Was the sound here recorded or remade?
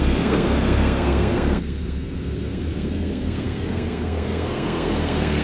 remade